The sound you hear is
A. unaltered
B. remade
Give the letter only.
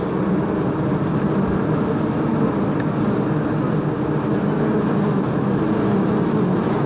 A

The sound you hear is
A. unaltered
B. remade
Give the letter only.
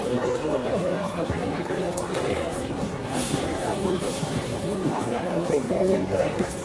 B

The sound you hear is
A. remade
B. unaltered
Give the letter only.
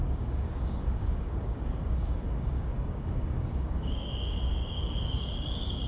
A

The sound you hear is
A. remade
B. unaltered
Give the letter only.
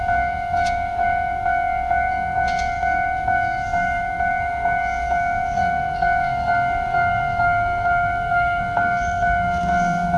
A